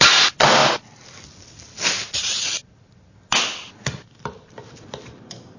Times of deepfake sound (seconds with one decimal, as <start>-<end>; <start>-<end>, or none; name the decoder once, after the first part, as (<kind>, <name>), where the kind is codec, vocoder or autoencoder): none